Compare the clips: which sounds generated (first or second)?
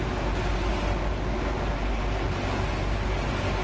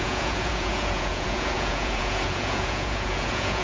second